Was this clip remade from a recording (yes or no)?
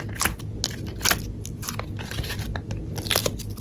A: no